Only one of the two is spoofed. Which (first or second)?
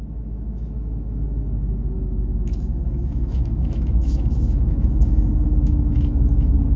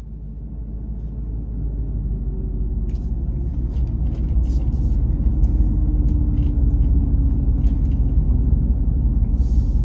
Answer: first